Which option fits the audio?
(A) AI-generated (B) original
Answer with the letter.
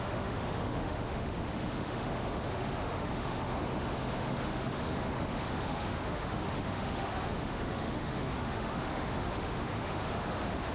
A